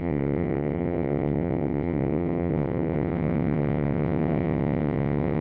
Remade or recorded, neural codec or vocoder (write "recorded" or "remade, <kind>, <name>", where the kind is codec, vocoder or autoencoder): remade, vocoder, WaveNeXt